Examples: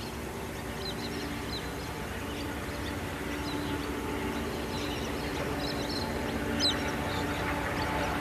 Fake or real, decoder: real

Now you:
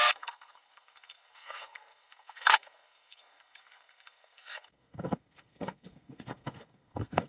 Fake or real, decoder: fake, codec, SNAC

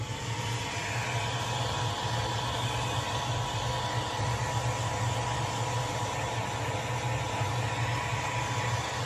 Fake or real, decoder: real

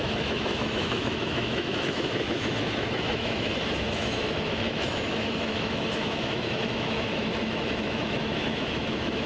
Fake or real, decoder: fake, autoencoder, DAC-VAE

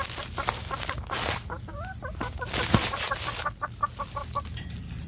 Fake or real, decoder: real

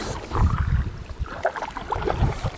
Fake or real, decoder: fake, vocoder, BigVGAN v2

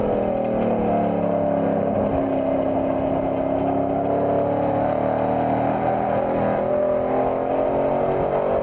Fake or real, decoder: real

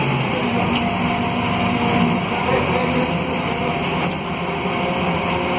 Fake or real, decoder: real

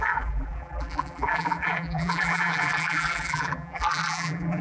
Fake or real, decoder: fake, vocoder, BigVGAN v2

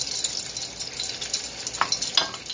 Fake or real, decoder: real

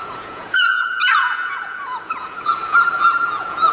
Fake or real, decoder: fake, vocoder, Vocos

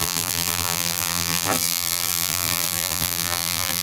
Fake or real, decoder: fake, vocoder, BigVGAN v2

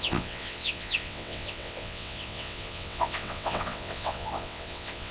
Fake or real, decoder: fake, vocoder, WaveNeXt